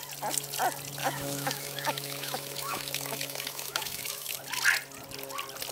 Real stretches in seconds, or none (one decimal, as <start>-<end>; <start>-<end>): 0.0-1.0; 4.4-5.7